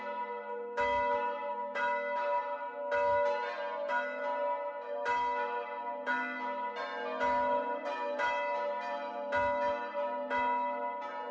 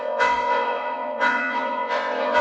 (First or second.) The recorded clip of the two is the first